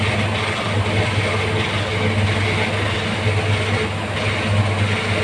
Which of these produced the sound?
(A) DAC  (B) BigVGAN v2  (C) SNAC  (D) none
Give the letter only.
D